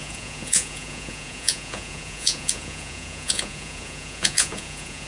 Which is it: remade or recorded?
remade